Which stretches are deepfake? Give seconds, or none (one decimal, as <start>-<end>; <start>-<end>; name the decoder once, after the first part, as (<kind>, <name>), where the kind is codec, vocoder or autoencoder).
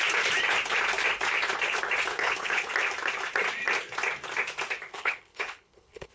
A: 2.1-2.7 (codec, HILCodec); 4.9-6.1